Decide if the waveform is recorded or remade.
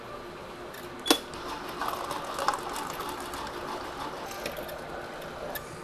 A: recorded